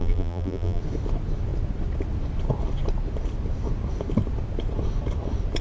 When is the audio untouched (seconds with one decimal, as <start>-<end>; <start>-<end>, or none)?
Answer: 0.8-5.6

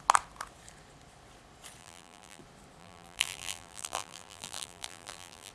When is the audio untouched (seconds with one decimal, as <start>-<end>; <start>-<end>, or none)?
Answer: 0.0-1.8; 2.4-2.8